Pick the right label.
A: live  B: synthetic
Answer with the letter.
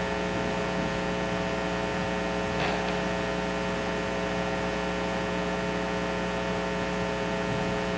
A